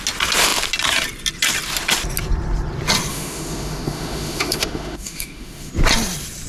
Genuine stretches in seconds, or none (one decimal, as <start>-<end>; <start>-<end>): 0.0-3.1; 5.7-6.5